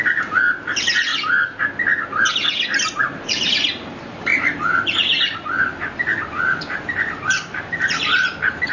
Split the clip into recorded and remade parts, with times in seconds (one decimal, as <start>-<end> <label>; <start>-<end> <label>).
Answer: 0.0-1.1 remade; 1.1-3.0 recorded; 3.0-8.7 remade